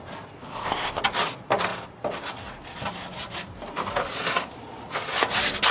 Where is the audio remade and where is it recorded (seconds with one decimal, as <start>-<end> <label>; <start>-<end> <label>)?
0.0-0.4 recorded; 0.4-1.0 remade; 1.0-5.7 recorded